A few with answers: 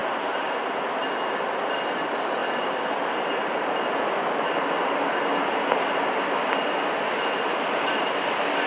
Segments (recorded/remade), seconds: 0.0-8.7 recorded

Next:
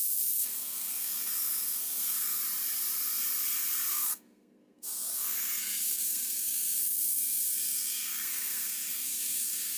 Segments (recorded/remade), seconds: 0.0-2.4 remade; 2.4-3.9 recorded; 3.9-9.8 remade

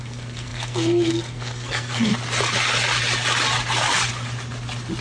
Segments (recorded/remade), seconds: 0.0-2.1 remade; 2.1-5.0 recorded